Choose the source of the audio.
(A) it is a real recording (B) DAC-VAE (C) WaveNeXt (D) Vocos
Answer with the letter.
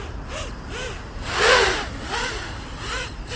A